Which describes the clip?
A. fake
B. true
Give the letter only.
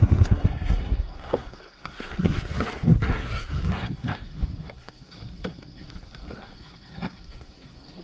A